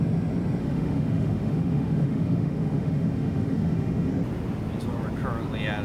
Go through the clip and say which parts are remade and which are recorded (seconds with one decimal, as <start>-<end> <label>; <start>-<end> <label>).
0.0-0.6 recorded; 0.6-4.1 remade; 4.1-5.8 recorded